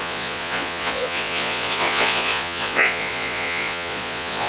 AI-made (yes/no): yes